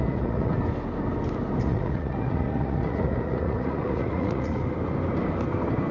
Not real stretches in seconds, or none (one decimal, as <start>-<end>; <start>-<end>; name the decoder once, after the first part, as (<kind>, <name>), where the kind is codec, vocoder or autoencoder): 0.0-0.5 (vocoder, Vocos); 1.6-4.6